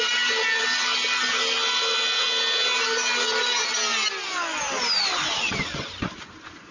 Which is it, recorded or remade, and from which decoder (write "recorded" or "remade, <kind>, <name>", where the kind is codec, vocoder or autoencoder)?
recorded